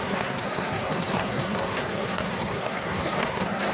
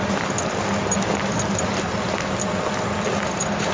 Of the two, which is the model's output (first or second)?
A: first